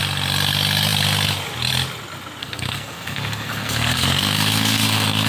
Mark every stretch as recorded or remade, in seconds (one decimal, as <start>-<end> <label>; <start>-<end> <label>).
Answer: 0.0-2.4 recorded; 2.4-5.3 remade